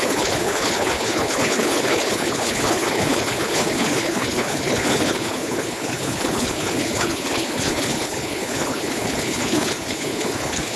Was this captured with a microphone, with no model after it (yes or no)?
no